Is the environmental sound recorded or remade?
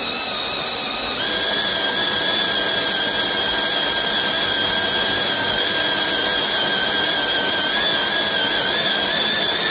recorded